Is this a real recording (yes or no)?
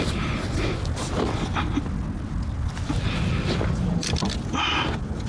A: yes